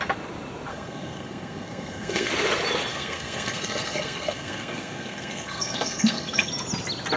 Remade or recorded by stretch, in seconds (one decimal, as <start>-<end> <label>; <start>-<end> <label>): 0.0-0.7 recorded; 0.7-2.3 remade; 2.3-2.9 recorded; 2.9-6.5 remade; 6.5-7.2 recorded